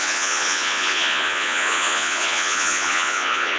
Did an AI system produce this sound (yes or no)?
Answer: yes